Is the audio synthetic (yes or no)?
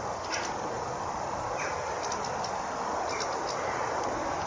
no